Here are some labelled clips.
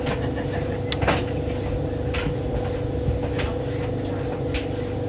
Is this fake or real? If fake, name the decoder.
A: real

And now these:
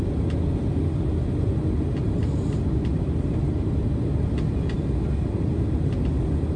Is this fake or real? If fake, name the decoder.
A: real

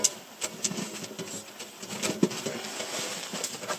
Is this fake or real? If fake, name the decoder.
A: real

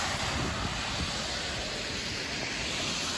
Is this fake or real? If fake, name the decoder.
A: real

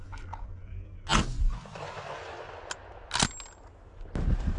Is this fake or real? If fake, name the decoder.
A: real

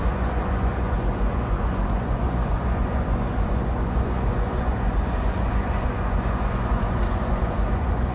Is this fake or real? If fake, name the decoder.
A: fake, vocoder, Vocos